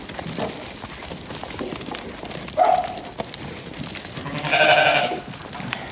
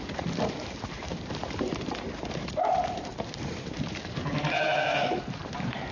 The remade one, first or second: second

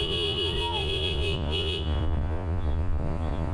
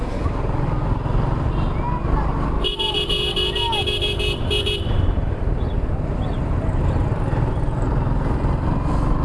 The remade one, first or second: first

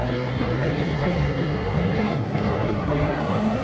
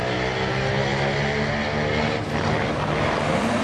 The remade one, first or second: first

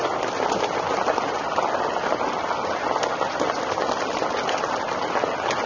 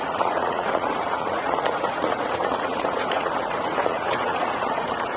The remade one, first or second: second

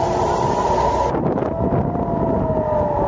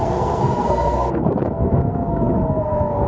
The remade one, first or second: second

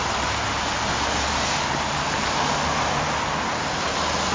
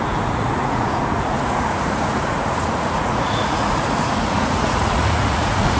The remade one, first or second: second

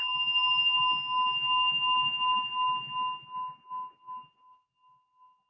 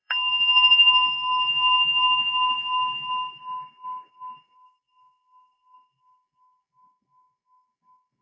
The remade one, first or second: second